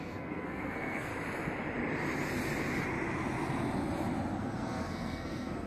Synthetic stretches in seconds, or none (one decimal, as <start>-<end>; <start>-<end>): 0.0-1.1; 4.4-5.7